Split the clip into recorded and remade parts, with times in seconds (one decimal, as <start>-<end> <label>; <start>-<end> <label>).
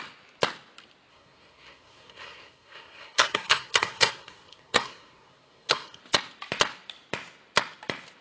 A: 0.0-1.1 recorded; 1.1-6.0 remade; 6.0-8.2 recorded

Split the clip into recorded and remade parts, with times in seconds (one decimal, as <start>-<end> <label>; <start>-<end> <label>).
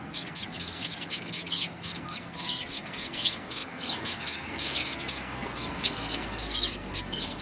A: 0.0-7.4 remade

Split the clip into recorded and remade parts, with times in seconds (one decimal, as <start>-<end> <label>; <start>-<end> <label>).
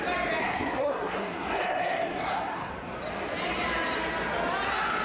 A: 0.0-0.4 recorded; 0.4-2.7 remade; 2.7-5.0 recorded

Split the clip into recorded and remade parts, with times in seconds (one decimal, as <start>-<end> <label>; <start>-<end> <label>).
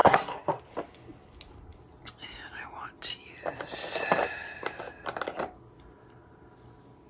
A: 0.0-0.6 remade; 0.6-7.1 recorded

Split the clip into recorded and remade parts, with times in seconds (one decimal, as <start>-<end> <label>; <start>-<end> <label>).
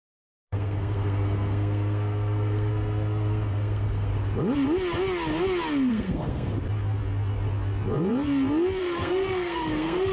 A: 0.0-4.1 remade; 4.1-5.9 recorded; 5.9-6.5 remade; 6.5-8.8 recorded; 8.8-10.1 remade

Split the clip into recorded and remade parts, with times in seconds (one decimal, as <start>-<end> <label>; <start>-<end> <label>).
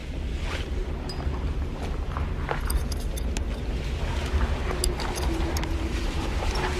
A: 0.0-6.8 recorded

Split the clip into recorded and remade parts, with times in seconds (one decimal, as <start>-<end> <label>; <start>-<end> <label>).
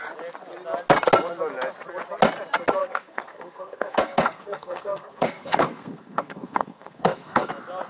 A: 0.0-2.8 recorded; 2.8-7.5 remade; 7.5-7.9 recorded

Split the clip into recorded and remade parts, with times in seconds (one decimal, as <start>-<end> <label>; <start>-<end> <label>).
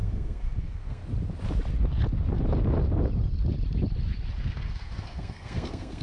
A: 0.0-1.0 remade; 1.0-4.4 recorded; 4.4-6.0 remade